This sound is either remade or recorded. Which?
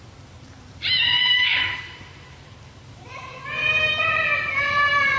remade